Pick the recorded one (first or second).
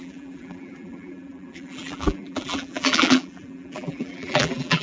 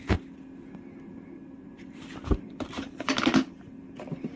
second